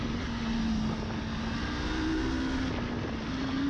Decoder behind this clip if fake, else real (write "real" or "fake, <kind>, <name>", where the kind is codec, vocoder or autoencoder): real